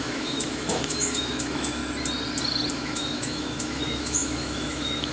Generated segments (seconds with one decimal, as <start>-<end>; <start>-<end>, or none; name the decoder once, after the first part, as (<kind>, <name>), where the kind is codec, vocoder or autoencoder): 0.0-1.8 (autoencoder, DAC-VAE); 2.7-5.1